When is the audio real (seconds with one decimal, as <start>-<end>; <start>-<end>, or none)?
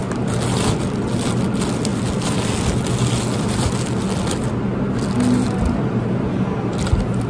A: 0.0-7.3